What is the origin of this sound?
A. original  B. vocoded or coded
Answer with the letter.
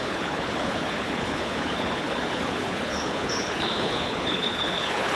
B